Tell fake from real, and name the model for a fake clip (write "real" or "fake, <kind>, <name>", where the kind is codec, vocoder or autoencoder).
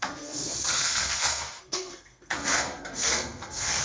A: fake, codec, SNAC